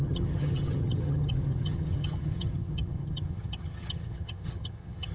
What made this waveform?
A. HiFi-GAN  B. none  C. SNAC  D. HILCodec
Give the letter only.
A